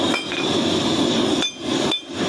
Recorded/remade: remade